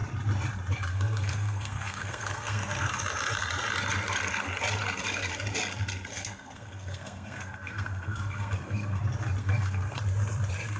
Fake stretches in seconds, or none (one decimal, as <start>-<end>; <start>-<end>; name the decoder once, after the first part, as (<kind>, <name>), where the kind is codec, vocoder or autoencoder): 0.9-2.9 (codec, SNAC); 6.1-9.0; 9.4-10.0